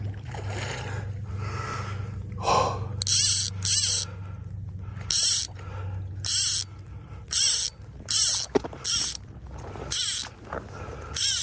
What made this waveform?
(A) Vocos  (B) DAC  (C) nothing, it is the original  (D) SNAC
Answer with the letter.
C